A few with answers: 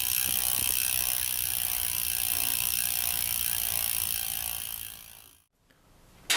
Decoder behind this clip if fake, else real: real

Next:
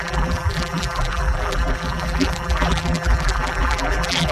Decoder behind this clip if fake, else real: fake, vocoder, BigVGAN v2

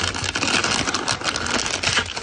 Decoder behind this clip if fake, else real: real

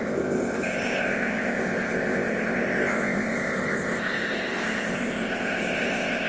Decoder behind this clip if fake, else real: fake, codec, ZipCodec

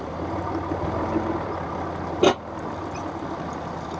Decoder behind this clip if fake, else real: real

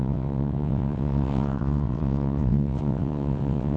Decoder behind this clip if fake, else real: fake, vocoder, WaveNeXt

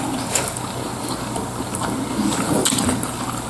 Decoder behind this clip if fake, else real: real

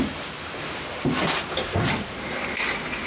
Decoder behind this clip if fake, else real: real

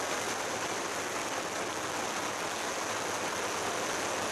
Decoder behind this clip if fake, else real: real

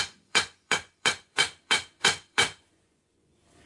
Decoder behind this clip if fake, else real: fake, vocoder, Vocos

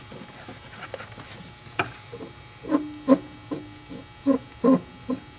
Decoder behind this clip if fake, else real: real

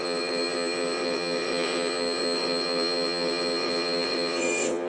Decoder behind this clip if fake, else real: fake, vocoder, WaveNeXt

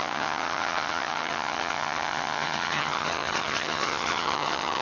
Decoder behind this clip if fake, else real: fake, vocoder, HiFi-GAN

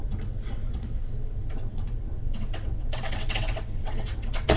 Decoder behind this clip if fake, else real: fake, vocoder, WaveNeXt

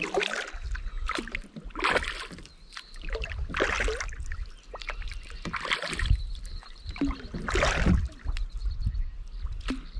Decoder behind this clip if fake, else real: real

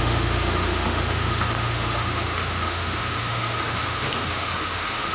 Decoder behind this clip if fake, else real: fake, autoencoder, DAC-VAE